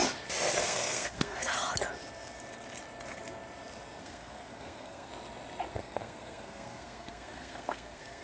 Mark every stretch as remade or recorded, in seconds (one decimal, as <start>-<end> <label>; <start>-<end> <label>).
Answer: 0.0-0.6 recorded; 0.6-1.5 remade; 1.5-4.0 recorded; 4.0-5.1 remade; 5.1-5.7 recorded; 5.7-8.2 remade